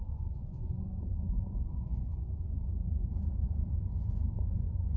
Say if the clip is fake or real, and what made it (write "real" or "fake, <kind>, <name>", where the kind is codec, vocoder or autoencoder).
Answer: fake, vocoder, Vocos